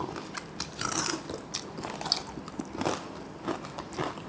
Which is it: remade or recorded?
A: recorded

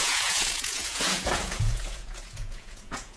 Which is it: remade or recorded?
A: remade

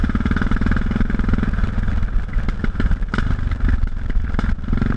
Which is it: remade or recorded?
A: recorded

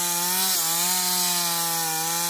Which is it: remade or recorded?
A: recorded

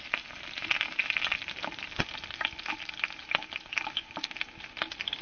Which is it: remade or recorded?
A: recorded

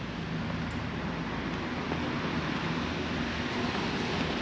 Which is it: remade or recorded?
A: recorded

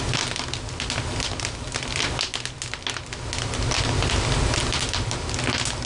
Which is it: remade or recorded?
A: recorded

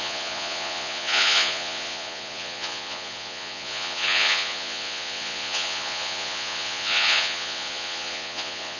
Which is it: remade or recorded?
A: remade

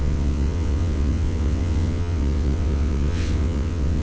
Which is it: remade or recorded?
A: remade